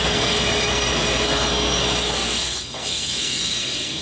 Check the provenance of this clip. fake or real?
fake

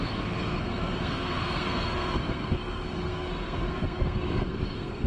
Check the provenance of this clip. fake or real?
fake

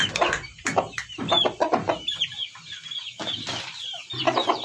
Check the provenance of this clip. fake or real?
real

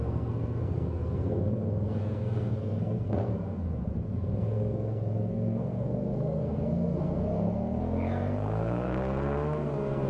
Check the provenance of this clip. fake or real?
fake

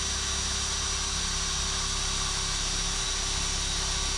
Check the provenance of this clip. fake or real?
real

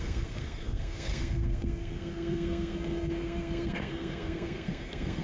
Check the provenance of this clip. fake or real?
fake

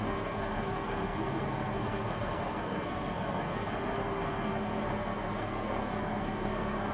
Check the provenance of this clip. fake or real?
fake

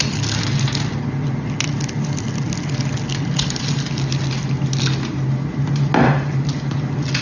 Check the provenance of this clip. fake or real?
real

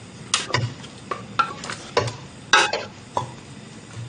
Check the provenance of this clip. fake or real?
real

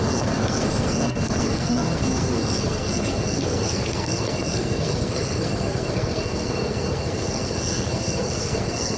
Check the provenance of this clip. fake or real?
fake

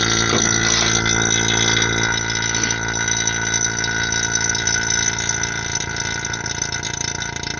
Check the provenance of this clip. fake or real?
real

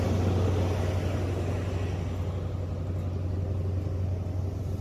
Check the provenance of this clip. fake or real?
real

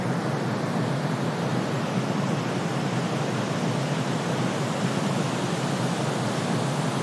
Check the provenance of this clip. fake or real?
real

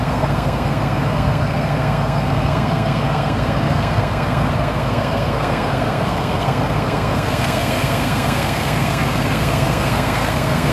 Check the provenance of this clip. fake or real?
fake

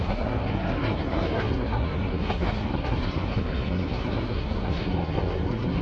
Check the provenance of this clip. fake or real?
fake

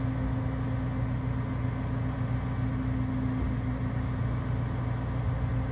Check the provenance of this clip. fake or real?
real